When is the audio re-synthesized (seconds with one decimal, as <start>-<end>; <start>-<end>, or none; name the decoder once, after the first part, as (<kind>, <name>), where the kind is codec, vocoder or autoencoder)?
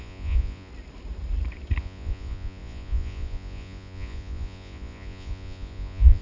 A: 0.0-0.7 (vocoder, Vocos); 1.8-6.2